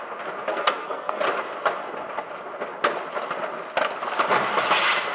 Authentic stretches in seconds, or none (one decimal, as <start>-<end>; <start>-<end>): 0.0-0.5; 1.2-5.1